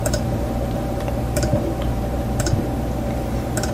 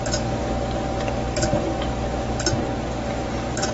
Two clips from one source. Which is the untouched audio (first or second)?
second